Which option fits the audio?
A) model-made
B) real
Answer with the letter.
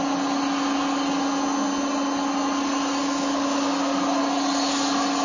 B